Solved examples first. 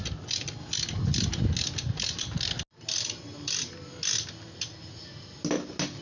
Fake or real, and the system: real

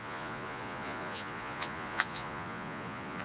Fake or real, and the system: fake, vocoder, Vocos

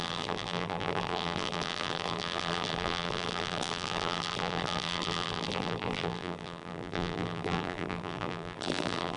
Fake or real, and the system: fake, vocoder, BigVGAN v2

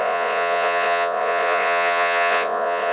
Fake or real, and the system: fake, vocoder, Vocos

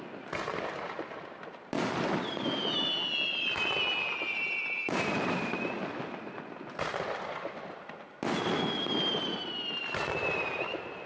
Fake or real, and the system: real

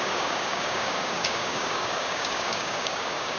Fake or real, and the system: fake, codec, DAC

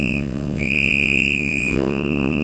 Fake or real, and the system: fake, vocoder, WaveNeXt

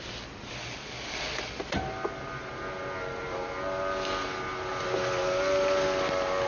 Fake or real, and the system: real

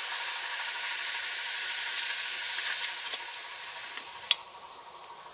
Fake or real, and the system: real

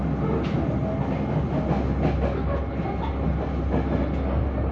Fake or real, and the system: real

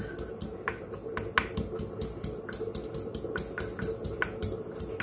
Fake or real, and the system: real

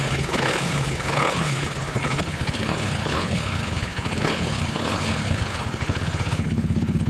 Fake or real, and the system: fake, codec, HILCodec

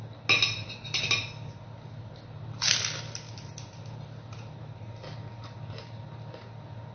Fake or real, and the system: real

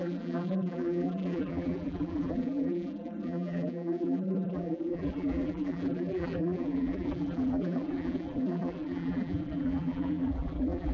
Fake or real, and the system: fake, vocoder, BigVGAN v2